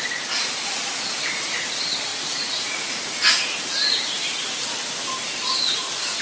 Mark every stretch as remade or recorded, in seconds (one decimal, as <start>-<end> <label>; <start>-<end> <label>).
0.0-2.1 recorded; 2.1-3.0 remade; 3.0-6.2 recorded

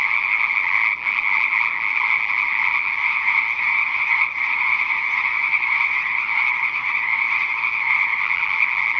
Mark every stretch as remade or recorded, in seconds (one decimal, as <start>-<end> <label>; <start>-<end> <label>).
0.0-3.0 remade; 3.0-8.2 recorded; 8.2-9.0 remade

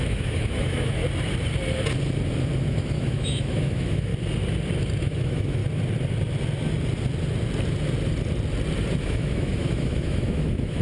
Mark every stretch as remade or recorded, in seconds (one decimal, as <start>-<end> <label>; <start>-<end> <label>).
0.0-1.0 remade; 1.0-2.7 recorded; 2.7-4.1 remade; 4.1-5.0 recorded; 5.0-5.6 remade; 5.6-9.0 recorded; 9.0-10.8 remade

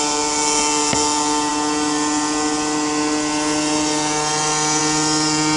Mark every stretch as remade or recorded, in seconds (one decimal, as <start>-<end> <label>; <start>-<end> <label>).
0.0-5.6 recorded